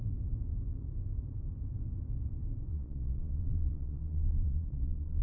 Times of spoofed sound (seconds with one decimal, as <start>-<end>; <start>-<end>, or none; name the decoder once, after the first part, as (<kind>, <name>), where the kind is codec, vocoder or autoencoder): 2.7-5.2 (vocoder, Vocos)